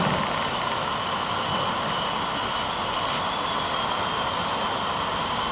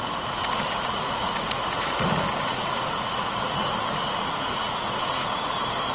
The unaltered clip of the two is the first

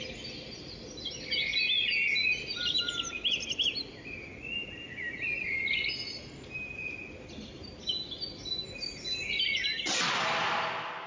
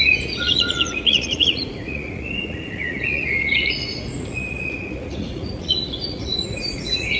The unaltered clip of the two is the first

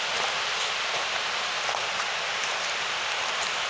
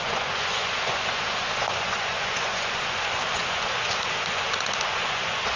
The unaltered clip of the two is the first